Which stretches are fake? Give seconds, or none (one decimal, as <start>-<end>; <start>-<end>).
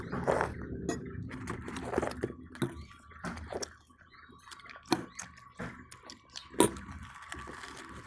none